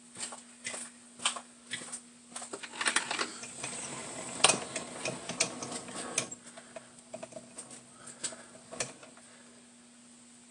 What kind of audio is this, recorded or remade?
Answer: recorded